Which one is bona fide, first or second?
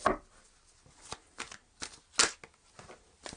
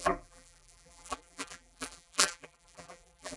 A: first